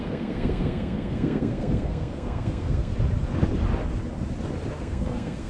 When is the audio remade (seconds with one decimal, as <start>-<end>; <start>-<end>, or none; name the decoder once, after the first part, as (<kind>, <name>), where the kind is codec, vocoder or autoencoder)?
0.0-2.9 (codec, SNAC); 4.8-5.5